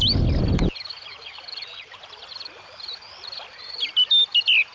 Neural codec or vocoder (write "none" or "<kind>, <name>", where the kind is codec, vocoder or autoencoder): none